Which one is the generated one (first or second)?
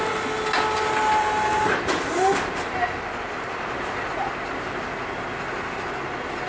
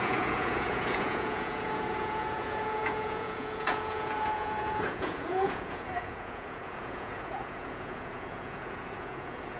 second